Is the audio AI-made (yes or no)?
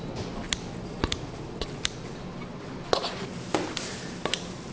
no